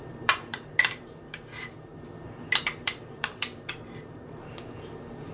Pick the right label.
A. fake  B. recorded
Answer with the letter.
A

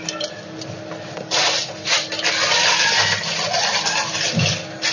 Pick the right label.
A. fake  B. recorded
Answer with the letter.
B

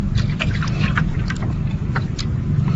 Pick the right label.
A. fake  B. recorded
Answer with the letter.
B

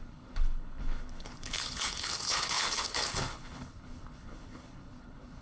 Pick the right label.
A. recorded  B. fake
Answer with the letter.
B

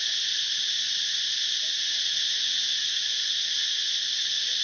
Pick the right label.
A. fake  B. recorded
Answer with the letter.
B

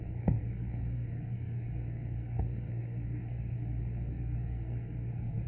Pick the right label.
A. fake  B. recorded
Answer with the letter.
A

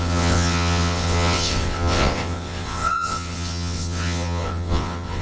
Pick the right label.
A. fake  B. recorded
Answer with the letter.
A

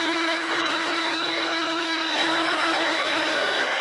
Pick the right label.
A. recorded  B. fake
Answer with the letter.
B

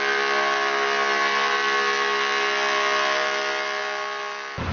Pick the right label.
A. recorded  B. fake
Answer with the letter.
A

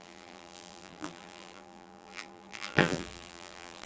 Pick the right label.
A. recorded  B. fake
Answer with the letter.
B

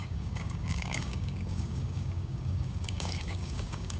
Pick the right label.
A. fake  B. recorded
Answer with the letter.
A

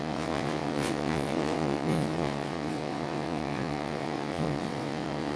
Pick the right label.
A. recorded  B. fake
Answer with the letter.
B